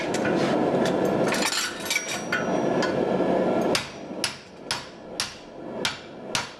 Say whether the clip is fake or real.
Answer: real